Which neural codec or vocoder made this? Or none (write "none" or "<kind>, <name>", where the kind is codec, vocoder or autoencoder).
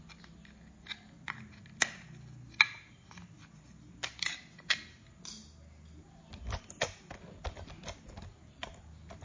none